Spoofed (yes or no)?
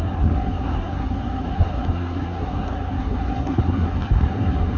yes